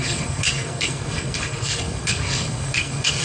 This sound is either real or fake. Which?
fake